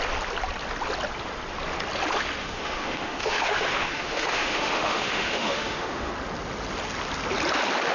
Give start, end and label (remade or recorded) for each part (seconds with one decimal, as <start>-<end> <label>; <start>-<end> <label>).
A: 0.0-2.4 recorded; 2.4-6.1 remade; 6.1-7.9 recorded